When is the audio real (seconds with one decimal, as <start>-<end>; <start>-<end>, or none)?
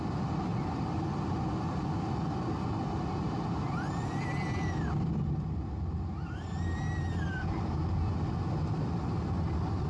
0.0-9.9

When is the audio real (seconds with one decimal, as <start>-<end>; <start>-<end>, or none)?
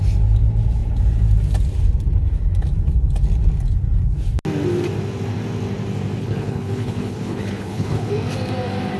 0.0-6.2; 8.1-9.0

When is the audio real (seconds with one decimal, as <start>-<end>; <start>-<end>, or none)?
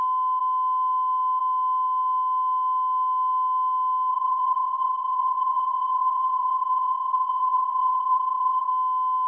0.0-4.1; 8.7-9.3